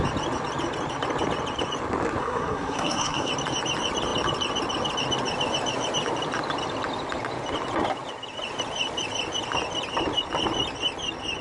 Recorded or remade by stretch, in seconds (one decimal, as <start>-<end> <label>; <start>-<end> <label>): 0.0-2.2 recorded; 2.2-3.3 remade; 3.3-11.4 recorded